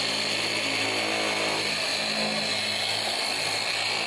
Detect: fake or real real